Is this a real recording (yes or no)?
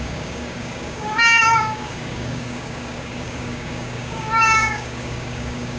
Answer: no